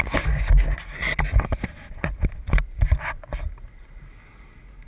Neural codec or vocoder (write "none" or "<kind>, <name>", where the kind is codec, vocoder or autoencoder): none